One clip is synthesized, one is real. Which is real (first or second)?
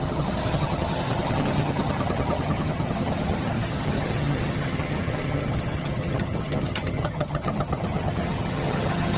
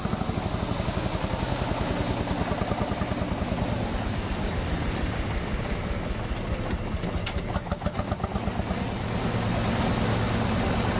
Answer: second